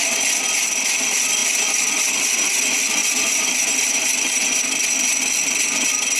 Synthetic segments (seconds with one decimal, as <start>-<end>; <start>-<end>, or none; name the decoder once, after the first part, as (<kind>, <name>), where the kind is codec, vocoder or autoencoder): none